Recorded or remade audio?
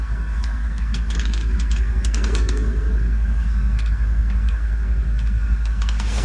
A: remade